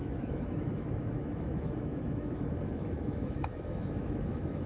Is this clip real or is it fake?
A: fake